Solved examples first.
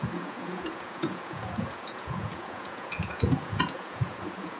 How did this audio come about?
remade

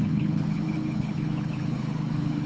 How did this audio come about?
remade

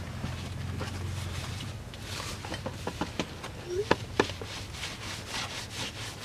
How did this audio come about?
recorded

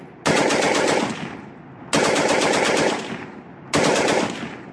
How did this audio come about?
recorded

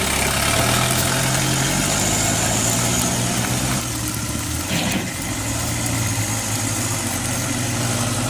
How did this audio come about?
recorded